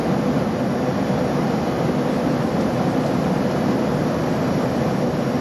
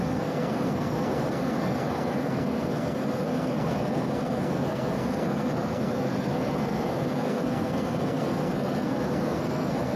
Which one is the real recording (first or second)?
first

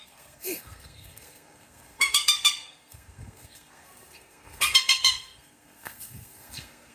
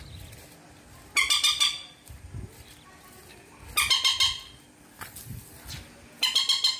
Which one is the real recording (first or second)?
second